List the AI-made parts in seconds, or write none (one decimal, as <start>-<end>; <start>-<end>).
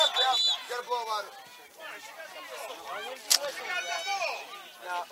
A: 1.5-2.1